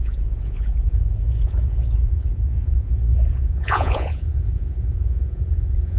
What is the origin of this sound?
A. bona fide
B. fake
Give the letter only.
B